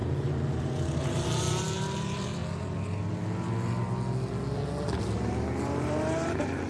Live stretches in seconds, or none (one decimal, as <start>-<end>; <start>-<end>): 2.4-5.0